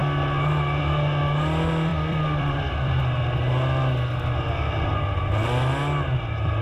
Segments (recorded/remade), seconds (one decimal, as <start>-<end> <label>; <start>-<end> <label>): 0.0-1.9 recorded; 1.9-3.0 remade; 3.0-6.6 recorded